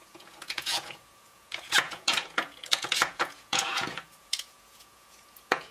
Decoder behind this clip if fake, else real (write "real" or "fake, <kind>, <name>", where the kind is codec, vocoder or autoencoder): fake, vocoder, Vocos